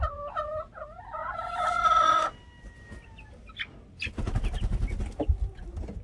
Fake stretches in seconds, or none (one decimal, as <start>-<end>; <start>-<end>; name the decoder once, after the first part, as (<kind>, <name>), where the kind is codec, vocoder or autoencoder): none